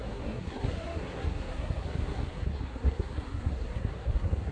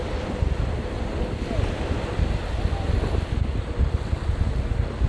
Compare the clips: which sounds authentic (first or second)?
second